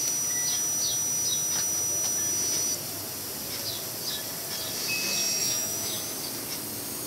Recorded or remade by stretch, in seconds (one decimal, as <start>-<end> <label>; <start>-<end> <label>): 0.0-5.4 recorded; 5.4-6.0 remade; 6.0-7.1 recorded